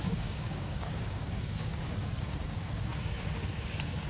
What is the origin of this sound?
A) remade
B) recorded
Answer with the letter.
A